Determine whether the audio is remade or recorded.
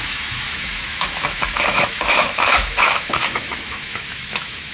remade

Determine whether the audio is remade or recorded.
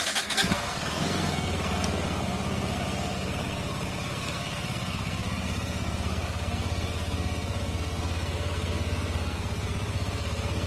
remade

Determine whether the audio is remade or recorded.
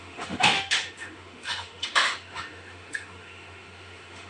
remade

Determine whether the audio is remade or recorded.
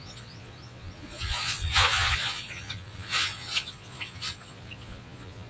remade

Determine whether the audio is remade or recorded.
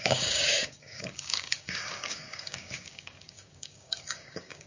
remade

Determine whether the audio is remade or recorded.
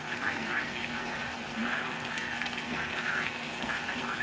remade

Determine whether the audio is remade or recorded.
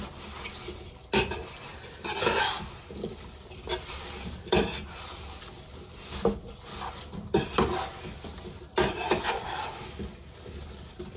recorded